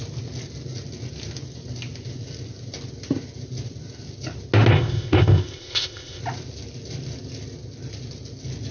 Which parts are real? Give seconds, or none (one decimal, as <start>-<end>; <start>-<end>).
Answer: 0.0-4.7; 6.2-8.7